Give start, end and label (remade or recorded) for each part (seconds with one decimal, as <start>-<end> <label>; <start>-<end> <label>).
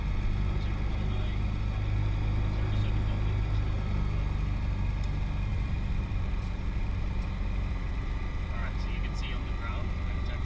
0.0-5.5 recorded; 5.5-8.7 remade; 8.7-10.4 recorded